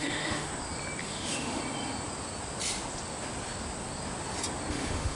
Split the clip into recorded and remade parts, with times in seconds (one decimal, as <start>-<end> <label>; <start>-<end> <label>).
0.0-0.5 remade; 0.5-1.0 recorded; 1.0-1.6 remade; 1.6-4.7 recorded; 4.7-5.2 remade